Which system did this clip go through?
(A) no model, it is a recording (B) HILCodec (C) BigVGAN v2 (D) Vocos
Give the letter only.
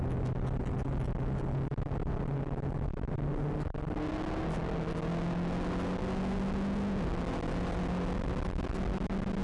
A